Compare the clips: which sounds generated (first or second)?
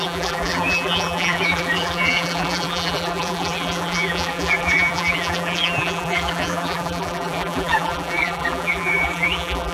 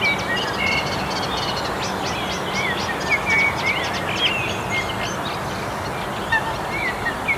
first